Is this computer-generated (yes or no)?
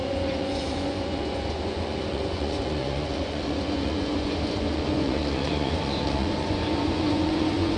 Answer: yes